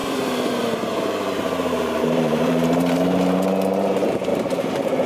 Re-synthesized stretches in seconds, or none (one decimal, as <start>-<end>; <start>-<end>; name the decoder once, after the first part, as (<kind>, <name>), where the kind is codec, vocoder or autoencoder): 0.0-3.0 (vocoder, BigVGAN v2); 4.3-5.1